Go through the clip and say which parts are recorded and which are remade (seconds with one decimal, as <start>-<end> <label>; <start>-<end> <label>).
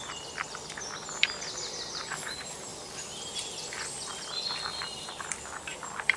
0.0-6.2 recorded